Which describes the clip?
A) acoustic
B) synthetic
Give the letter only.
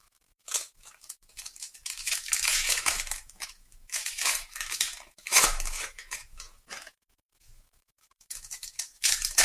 B